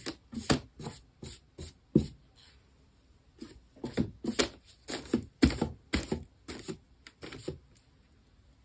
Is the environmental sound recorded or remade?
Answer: recorded